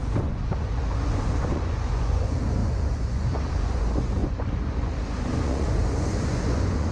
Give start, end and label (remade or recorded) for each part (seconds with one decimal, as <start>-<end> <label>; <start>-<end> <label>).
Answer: 0.0-6.9 remade